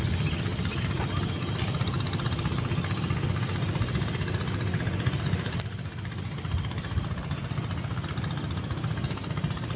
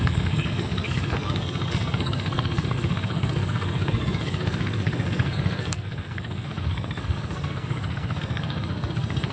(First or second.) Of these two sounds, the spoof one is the second